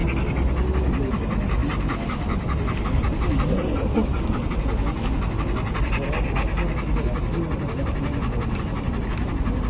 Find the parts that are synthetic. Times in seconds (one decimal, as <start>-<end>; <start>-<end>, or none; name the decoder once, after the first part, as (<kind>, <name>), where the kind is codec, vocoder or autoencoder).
none